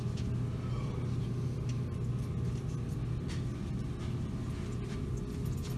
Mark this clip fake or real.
real